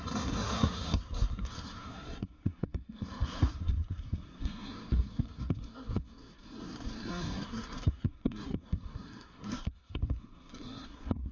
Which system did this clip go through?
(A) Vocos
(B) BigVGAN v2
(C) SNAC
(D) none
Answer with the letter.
C